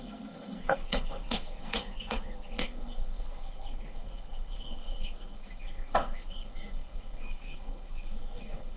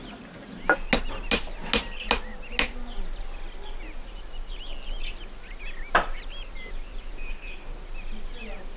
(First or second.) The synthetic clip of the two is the first